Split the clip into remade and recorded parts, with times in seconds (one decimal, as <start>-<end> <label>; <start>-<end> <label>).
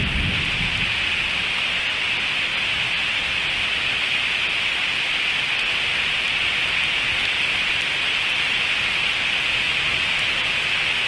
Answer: 0.0-11.1 recorded